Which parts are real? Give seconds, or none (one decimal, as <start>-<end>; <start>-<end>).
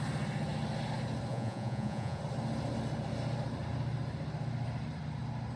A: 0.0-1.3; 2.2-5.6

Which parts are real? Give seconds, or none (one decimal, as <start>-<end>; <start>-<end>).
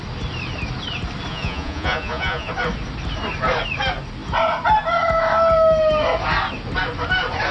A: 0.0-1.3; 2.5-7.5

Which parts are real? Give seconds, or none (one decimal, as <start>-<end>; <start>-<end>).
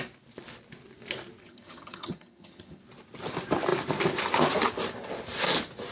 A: 0.0-1.4; 2.8-5.9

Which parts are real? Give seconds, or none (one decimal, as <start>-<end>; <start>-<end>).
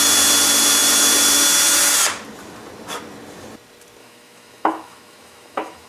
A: 0.0-4.0